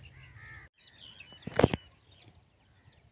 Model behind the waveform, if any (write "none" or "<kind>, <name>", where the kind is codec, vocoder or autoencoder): none